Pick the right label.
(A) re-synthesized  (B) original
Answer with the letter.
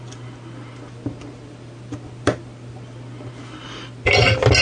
B